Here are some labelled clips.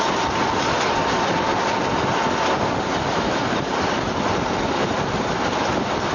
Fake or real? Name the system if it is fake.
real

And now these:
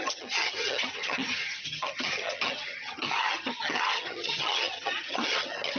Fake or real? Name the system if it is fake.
fake, vocoder, HiFi-GAN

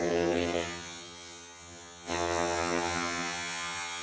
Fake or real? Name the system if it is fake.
fake, vocoder, HiFi-GAN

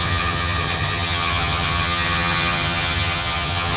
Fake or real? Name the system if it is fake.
fake, vocoder, HiFi-GAN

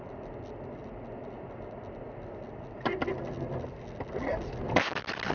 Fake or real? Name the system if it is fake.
real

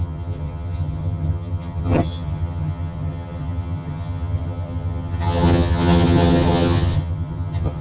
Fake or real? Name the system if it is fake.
fake, vocoder, HiFi-GAN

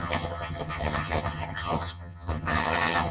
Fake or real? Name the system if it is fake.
fake, vocoder, HiFi-GAN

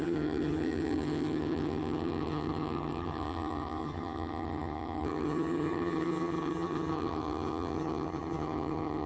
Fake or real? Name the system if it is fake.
fake, vocoder, HiFi-GAN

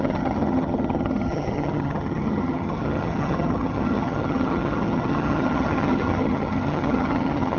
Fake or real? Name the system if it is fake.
fake, vocoder, HiFi-GAN